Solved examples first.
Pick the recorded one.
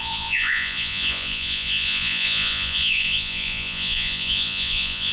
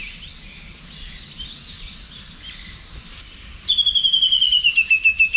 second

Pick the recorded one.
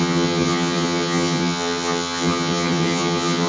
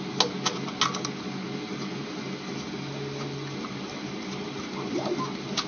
second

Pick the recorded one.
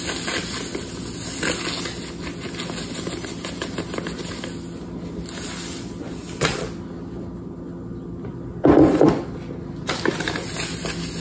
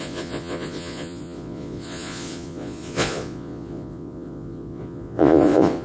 first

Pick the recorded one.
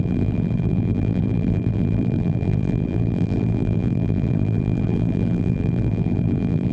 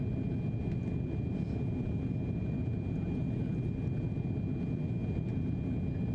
second